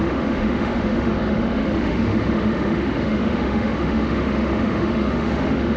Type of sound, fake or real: fake